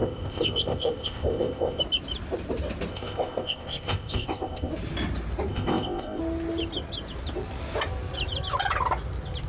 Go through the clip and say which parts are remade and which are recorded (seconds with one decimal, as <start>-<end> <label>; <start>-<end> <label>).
0.0-1.8 remade; 1.8-2.9 recorded; 2.9-4.7 remade; 4.7-5.5 recorded; 5.5-6.2 remade; 6.2-9.5 recorded